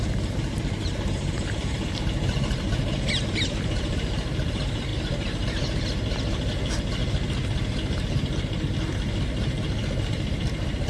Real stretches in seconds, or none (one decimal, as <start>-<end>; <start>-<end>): 7.0-8.1